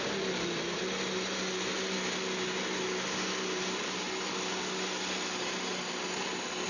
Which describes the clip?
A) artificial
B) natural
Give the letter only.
B